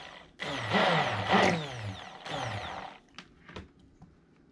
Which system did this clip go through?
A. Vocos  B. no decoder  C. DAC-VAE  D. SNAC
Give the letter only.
B